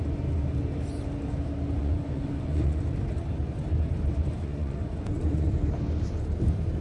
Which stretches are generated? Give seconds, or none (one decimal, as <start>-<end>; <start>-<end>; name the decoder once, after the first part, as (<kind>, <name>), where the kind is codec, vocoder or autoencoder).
1.8-2.8 (vocoder, Vocos); 4.4-5.5